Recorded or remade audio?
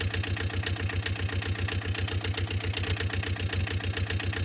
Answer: recorded